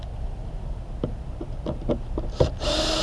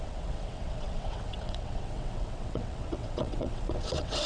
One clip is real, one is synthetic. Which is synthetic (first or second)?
second